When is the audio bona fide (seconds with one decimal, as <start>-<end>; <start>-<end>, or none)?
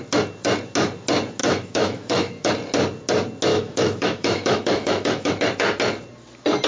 0.0-1.4; 2.5-3.5; 5.3-6.7